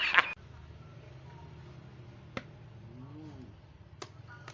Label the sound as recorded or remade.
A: recorded